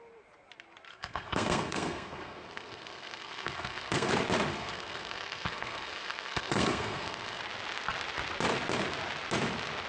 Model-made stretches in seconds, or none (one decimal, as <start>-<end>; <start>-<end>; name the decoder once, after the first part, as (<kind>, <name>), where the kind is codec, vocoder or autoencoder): 0.9-4.1 (codec, SNAC); 4.5-7.4